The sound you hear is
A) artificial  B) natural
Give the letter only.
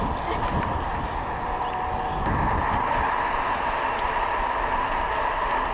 B